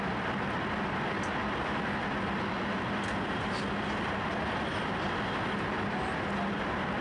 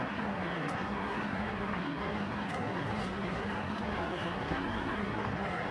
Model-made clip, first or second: second